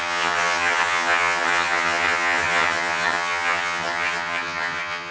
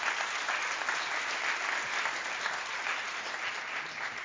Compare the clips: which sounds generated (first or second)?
first